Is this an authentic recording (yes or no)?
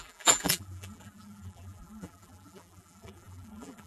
no